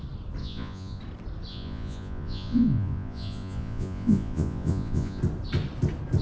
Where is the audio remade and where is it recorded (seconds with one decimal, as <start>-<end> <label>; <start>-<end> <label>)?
0.0-0.4 recorded; 0.4-1.0 remade; 1.0-1.5 recorded; 1.5-5.2 remade; 5.2-6.2 recorded